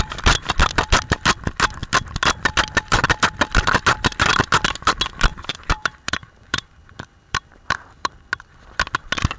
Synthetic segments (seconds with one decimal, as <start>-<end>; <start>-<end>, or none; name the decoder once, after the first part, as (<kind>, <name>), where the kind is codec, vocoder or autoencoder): 5.3-8.1 (vocoder, BigVGAN v2)